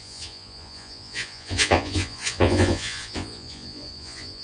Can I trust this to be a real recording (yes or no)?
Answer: no